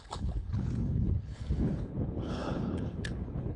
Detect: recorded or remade remade